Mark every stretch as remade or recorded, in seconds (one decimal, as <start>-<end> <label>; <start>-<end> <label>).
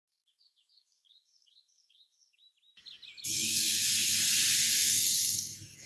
0.0-2.4 remade; 2.4-3.3 recorded; 3.3-3.9 remade; 3.9-4.6 recorded; 4.6-5.9 remade